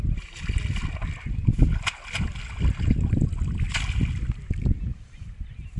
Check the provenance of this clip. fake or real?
real